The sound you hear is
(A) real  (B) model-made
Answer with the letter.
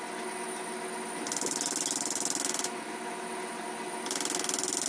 A